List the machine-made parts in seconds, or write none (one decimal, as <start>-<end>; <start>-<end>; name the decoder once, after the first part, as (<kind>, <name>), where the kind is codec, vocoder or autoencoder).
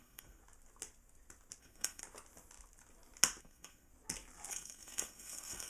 0.0-0.4 (codec, SNAC); 1.6-2.0; 3.4-3.9; 4.5-5.7